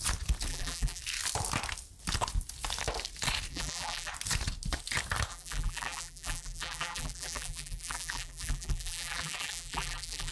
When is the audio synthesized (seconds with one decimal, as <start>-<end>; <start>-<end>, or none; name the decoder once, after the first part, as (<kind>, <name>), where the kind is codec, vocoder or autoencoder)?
0.5-1.0 (vocoder, BigVGAN v2); 3.5-4.1; 5.3-10.3